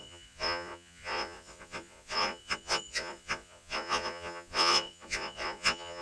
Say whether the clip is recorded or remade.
remade